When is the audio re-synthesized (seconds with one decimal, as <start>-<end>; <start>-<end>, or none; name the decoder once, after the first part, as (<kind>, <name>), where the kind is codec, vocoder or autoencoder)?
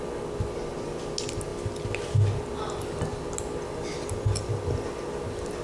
none